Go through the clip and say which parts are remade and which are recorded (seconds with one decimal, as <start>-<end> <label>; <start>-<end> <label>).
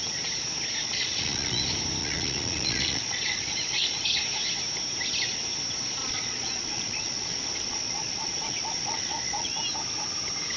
0.0-0.8 recorded; 0.8-1.6 remade; 1.6-2.0 recorded; 2.0-4.2 remade; 4.2-6.0 recorded; 6.0-9.6 remade; 9.6-10.6 recorded